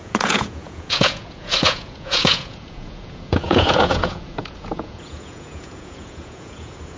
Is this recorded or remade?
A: remade